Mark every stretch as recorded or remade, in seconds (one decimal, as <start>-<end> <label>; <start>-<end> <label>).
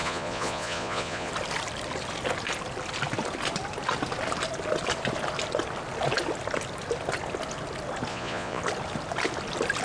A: 0.0-1.3 remade; 1.3-8.1 recorded; 8.1-8.6 remade; 8.6-9.8 recorded